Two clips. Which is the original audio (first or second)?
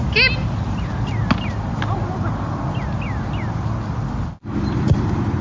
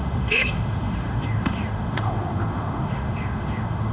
first